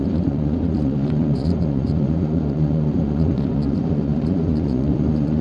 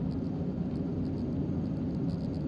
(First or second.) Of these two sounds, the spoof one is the first